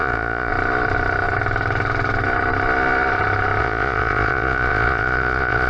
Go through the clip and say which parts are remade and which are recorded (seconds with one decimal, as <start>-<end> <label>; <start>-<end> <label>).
0.0-0.5 remade; 0.5-3.6 recorded; 3.6-5.7 remade